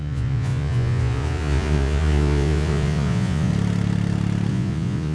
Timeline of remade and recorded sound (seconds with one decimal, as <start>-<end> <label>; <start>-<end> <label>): 0.0-3.5 remade; 3.5-4.5 recorded; 4.5-5.1 remade

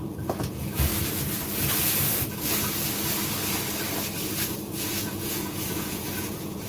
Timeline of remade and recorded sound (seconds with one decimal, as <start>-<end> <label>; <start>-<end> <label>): 0.0-0.9 remade; 0.9-4.9 recorded; 4.9-6.7 remade